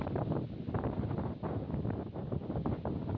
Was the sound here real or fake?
real